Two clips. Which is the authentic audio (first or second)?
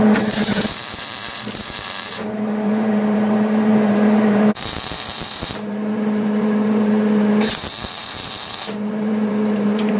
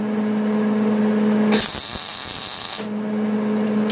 second